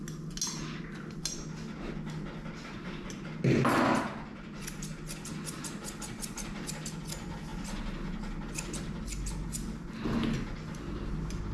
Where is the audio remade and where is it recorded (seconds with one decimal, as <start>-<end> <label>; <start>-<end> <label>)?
0.0-11.5 recorded